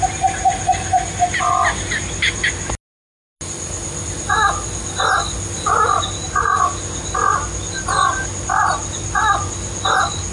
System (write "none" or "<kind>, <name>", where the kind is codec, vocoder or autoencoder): none